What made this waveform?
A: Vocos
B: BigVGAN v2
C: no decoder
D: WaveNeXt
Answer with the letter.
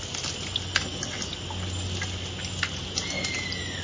C